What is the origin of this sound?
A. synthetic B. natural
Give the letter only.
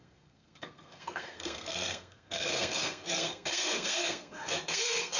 A